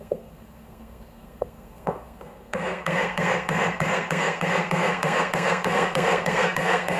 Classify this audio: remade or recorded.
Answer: remade